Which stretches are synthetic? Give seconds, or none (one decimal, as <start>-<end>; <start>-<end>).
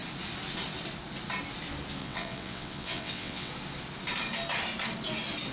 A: 2.0-3.5